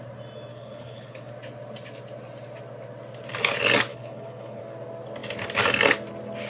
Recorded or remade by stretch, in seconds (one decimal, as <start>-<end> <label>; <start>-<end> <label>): 0.0-0.5 recorded; 0.5-1.3 remade; 1.3-3.9 recorded; 3.9-4.6 remade; 4.6-6.5 recorded